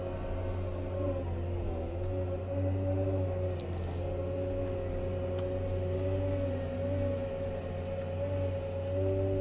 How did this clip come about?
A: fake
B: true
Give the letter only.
B